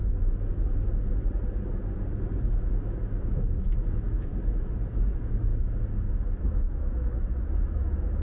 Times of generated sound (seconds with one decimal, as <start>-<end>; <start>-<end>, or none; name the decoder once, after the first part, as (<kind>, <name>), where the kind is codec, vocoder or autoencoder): 2.7-4.3 (autoencoder, DAC-VAE); 4.9-5.5; 6.4-8.2